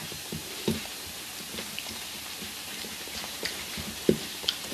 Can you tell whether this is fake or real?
fake